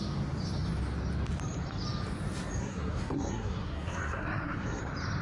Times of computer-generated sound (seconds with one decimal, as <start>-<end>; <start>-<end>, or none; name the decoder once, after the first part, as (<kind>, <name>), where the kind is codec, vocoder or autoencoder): 2.6-4.8 (codec, SNAC)